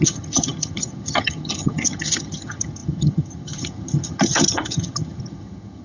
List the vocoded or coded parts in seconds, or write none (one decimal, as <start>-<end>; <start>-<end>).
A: 0.0-5.8